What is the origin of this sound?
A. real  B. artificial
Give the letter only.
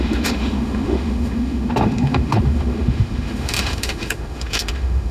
B